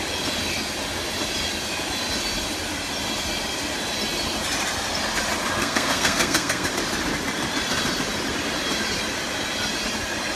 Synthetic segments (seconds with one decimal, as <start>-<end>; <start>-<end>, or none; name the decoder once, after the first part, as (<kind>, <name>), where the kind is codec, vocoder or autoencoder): 5.6-6.7 (codec, SNAC)